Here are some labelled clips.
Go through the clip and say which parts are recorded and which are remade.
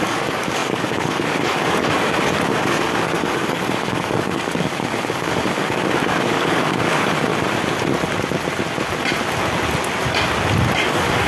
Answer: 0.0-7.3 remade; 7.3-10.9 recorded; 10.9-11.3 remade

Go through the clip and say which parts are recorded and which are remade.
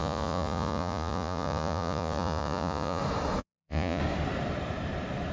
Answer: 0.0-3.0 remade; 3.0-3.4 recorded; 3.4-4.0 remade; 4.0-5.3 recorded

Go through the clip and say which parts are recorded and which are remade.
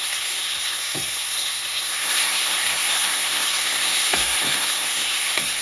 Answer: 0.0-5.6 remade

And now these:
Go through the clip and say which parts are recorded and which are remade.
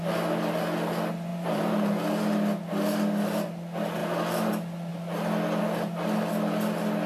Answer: 0.0-1.3 recorded; 1.3-1.9 remade; 1.9-7.1 recorded